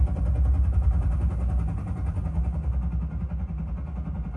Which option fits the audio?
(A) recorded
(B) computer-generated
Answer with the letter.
A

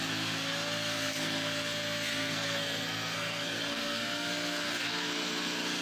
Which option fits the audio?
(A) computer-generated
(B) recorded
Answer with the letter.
A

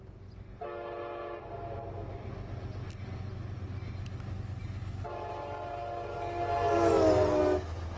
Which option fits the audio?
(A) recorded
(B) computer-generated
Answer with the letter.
A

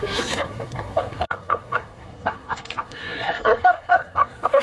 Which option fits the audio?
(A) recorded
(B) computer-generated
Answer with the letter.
B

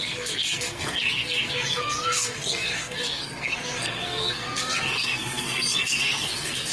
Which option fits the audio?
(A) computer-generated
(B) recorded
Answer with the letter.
A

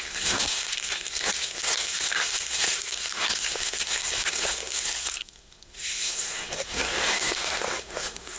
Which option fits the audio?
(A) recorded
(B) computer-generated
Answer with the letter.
B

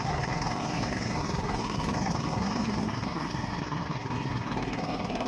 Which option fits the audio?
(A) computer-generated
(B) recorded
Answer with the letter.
A